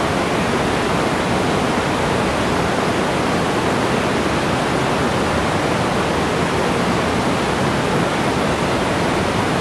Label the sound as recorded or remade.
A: recorded